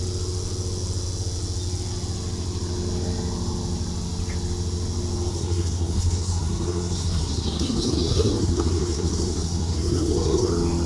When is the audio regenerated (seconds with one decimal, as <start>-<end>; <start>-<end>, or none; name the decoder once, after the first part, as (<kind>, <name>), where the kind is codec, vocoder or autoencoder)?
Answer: 5.3-10.5 (codec, SNAC)